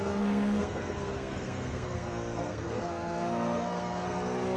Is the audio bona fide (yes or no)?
no